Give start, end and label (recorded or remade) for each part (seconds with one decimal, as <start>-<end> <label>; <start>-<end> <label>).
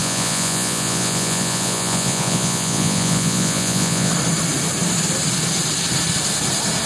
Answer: 0.0-4.1 remade; 4.1-6.9 recorded